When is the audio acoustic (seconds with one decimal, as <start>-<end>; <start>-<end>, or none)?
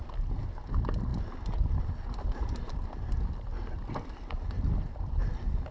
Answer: 0.0-5.7